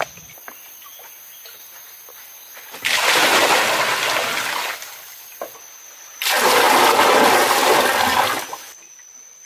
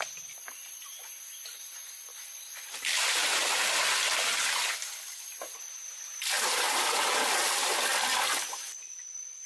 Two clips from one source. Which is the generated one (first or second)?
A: second